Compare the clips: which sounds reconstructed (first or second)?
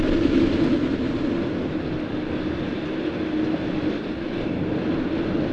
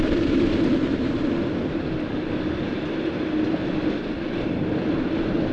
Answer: second